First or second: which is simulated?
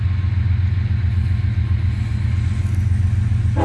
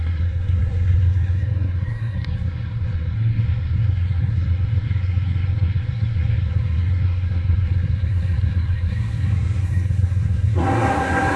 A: second